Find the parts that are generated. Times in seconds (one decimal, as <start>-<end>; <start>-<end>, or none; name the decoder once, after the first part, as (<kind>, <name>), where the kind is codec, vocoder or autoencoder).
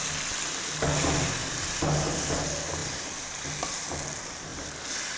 1.4-2.3 (vocoder, BigVGAN v2); 2.8-3.7